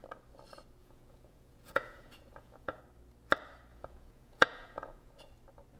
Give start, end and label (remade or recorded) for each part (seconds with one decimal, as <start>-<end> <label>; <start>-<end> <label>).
0.0-0.8 recorded; 0.8-2.8 remade; 2.8-3.7 recorded; 3.7-5.1 remade; 5.1-5.8 recorded